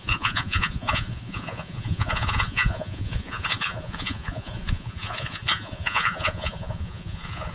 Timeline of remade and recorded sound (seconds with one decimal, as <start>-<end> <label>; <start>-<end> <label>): 0.0-7.5 remade